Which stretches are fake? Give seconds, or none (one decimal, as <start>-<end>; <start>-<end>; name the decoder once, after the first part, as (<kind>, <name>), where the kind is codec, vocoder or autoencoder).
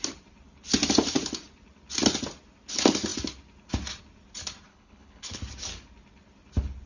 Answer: 4.7-5.4 (codec, HILCodec)